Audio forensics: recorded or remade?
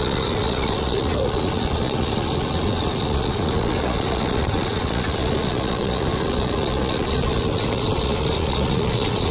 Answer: remade